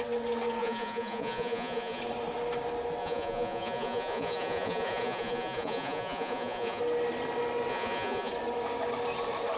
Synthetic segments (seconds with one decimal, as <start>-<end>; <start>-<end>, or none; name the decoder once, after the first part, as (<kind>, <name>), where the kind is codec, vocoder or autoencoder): 0.6-2.0 (vocoder, Vocos); 3.0-6.8; 7.7-8.3